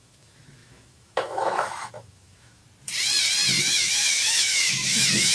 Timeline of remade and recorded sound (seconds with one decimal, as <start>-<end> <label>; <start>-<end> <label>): 0.0-2.6 remade; 2.6-3.6 recorded; 3.6-5.3 remade